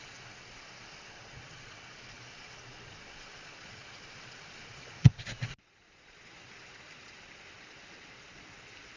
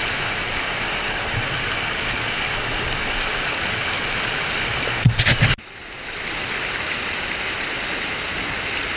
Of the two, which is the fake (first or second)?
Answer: first